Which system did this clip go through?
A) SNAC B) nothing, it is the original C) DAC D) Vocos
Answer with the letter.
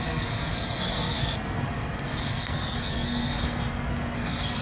A